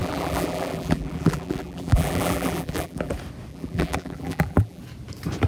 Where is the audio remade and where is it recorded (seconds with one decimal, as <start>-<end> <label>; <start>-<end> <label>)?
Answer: 0.0-3.1 remade; 3.1-3.5 recorded; 3.5-4.8 remade; 4.8-5.5 recorded